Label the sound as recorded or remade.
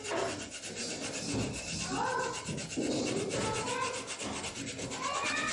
recorded